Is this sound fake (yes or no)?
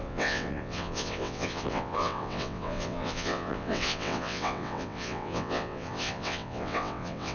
yes